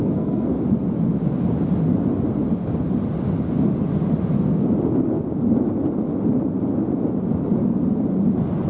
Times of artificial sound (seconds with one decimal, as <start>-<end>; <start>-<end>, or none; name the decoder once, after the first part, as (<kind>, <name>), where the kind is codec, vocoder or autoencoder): 0.0-0.6 (codec, SNAC)